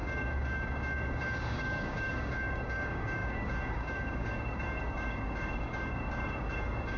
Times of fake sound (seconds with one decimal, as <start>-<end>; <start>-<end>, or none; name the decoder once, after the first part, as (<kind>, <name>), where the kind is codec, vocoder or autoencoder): 0.0-7.0 (codec, DAC)